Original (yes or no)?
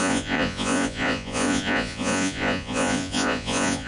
no